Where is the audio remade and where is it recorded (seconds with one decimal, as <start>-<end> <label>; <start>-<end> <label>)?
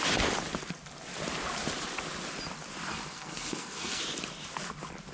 0.0-2.9 recorded; 2.9-4.0 remade; 4.0-5.1 recorded